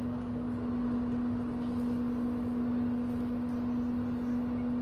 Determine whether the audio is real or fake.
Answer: real